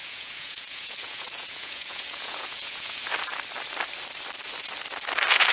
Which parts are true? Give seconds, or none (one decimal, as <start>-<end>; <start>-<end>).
3.1-5.5